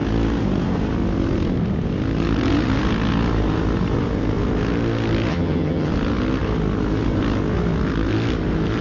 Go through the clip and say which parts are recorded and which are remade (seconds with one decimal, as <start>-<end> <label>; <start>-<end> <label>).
0.0-5.3 recorded; 5.3-5.9 remade; 5.9-8.8 recorded